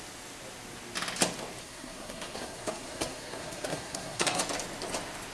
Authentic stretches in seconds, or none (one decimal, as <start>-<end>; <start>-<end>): 0.0-1.6; 4.4-5.3

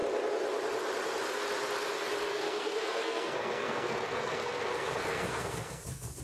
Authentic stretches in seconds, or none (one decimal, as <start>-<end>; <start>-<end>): 0.0-2.3